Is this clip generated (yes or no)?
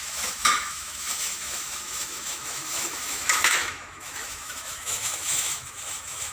yes